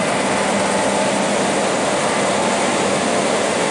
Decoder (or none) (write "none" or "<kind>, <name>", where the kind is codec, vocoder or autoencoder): none